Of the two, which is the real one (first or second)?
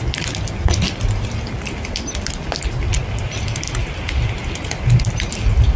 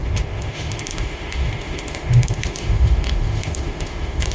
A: first